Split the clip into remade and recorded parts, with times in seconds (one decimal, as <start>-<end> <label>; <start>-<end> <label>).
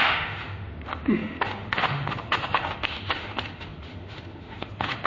0.0-5.1 remade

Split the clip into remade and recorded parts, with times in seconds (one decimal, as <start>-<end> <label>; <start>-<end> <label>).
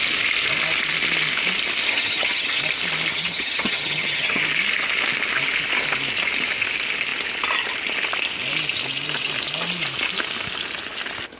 0.0-1.9 recorded; 1.9-2.6 remade; 2.6-3.1 recorded; 3.1-4.4 remade; 4.4-11.4 recorded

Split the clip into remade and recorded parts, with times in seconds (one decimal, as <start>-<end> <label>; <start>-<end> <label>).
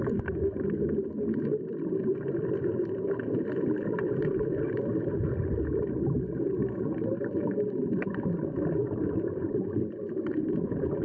0.0-1.2 remade; 1.2-2.0 recorded; 2.0-11.0 remade